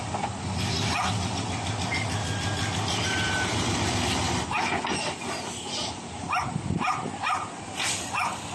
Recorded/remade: recorded